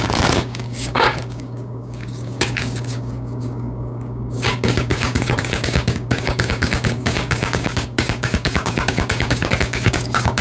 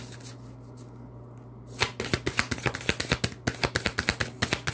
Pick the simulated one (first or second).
first